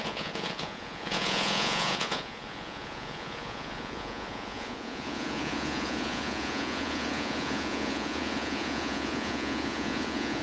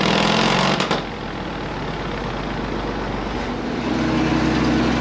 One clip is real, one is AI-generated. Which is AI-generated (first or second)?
first